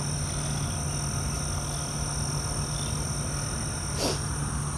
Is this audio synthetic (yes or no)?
no